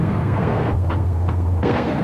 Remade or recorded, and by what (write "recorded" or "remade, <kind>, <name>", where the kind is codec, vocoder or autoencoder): remade, codec, SNAC